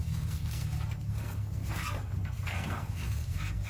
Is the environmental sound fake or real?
fake